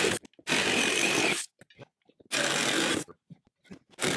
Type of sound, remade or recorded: recorded